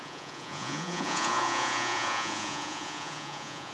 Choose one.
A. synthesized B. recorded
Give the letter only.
A